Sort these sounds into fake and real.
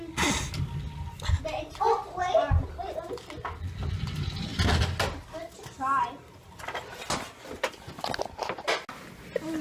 real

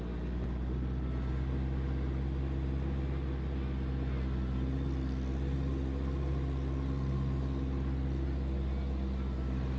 real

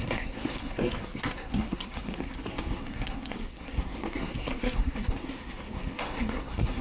fake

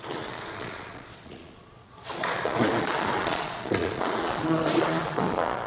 fake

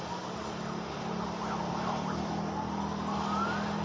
real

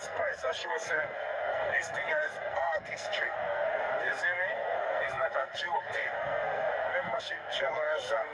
fake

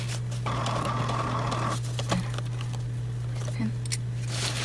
real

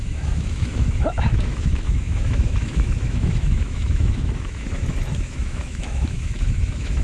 fake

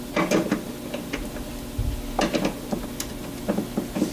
real